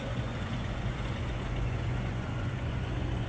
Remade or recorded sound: remade